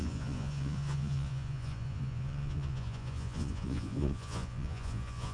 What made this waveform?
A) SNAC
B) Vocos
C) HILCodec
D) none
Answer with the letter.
B